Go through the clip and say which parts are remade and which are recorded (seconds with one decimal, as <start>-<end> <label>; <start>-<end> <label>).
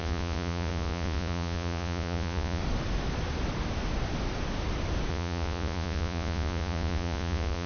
0.0-2.6 remade; 2.6-5.1 recorded; 5.1-7.7 remade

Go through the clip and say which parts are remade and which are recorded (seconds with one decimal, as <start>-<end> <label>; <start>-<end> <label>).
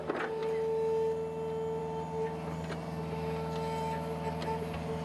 0.0-5.0 recorded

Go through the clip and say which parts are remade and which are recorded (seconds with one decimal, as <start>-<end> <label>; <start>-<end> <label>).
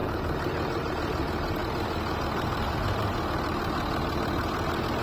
0.0-0.9 remade; 0.9-5.0 recorded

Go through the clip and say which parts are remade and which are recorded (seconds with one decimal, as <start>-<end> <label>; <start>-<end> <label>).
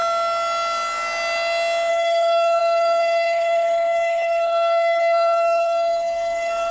0.0-1.9 recorded; 1.9-6.7 remade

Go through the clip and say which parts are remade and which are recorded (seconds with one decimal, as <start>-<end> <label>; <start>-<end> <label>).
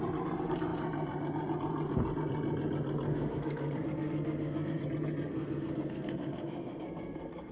0.0-3.1 recorded; 3.1-4.8 remade; 4.8-5.3 recorded; 5.3-7.5 remade